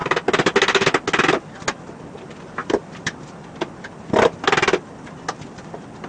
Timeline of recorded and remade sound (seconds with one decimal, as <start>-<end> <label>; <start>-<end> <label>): 0.0-2.6 recorded; 2.6-3.2 remade; 3.2-6.1 recorded